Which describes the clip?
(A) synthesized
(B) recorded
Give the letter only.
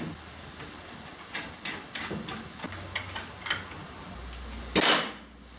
B